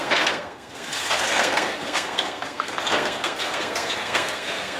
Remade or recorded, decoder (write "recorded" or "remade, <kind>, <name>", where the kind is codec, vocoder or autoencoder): remade, codec, SNAC